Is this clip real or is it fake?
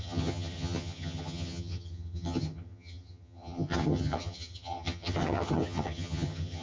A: fake